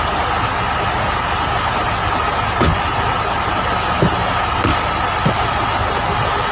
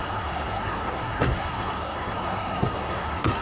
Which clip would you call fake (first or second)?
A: second